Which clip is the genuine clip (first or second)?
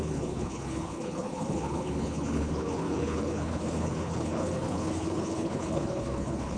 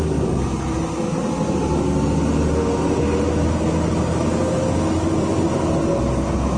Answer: second